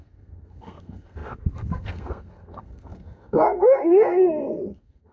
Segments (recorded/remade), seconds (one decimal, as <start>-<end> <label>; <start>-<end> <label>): 0.0-5.1 remade